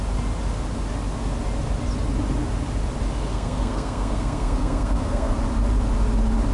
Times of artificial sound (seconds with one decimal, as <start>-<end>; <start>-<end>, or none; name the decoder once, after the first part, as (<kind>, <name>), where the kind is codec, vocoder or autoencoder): 3.3-5.3 (codec, SNAC)